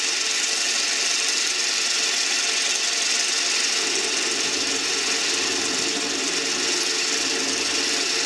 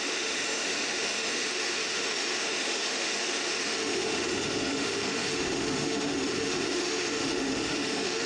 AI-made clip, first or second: second